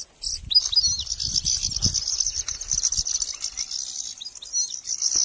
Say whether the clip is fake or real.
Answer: real